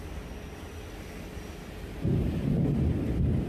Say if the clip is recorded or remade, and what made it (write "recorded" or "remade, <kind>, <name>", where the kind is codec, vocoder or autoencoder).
recorded